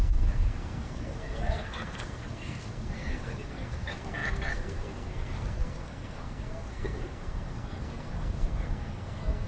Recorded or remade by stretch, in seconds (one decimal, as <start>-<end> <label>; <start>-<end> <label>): 0.0-9.5 remade